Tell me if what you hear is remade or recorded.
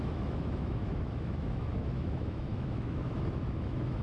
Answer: remade